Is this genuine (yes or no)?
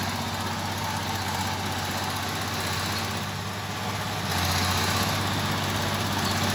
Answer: yes